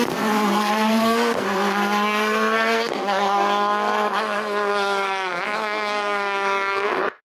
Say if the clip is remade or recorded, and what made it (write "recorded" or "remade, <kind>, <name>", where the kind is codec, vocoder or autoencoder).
remade, codec, SNAC